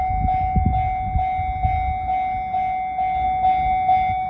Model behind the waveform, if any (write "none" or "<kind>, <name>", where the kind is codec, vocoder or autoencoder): none